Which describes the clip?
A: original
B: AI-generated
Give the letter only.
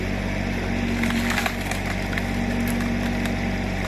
A